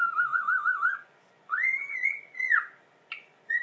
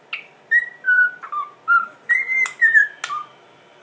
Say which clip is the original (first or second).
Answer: second